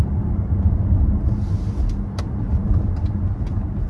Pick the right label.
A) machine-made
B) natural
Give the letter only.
B